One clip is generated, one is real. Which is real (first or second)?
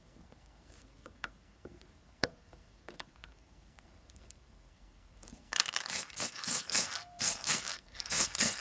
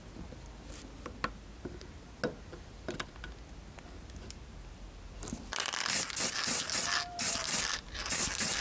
second